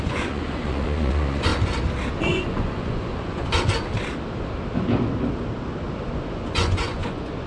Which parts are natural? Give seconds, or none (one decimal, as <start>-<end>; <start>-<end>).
1.5-2.1; 3.4-6.3